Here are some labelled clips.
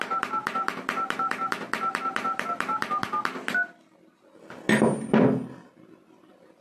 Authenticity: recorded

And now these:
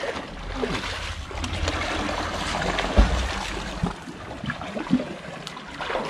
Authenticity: remade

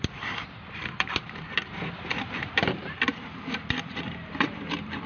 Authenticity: remade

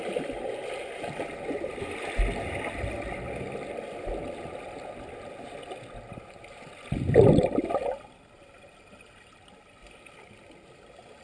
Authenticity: recorded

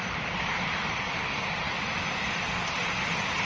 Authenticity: remade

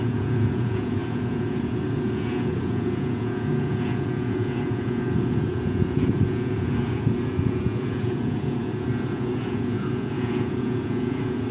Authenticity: remade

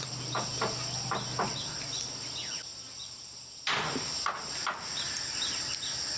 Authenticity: recorded